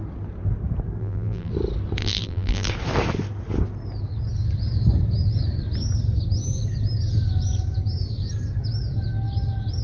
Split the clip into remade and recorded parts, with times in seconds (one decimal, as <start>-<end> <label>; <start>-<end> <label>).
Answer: 0.0-1.0 recorded; 1.0-1.5 remade; 1.5-2.0 recorded; 2.0-2.7 remade; 2.7-9.8 recorded